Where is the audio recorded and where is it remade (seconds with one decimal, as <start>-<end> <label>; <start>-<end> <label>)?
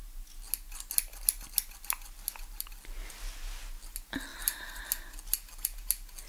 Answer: 0.0-4.3 recorded; 4.3-4.8 remade; 4.8-6.3 recorded